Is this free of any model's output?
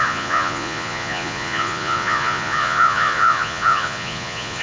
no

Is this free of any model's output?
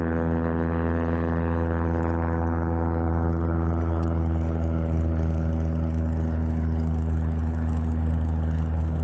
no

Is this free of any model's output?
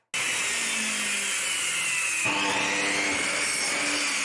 yes